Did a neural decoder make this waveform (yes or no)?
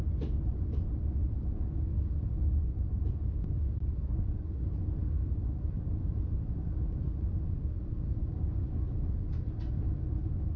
no